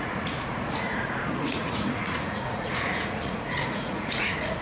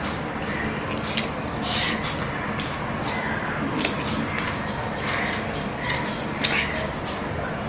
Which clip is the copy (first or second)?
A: first